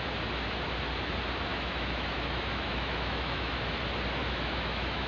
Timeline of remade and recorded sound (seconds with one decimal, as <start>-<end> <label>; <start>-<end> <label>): 0.0-1.5 recorded; 1.5-3.6 remade; 3.6-4.2 recorded; 4.2-5.1 remade